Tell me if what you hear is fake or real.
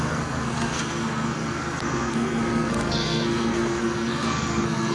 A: fake